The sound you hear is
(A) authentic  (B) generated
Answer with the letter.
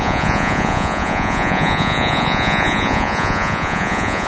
B